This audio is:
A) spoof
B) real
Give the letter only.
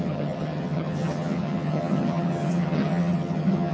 A